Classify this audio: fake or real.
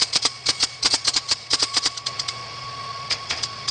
fake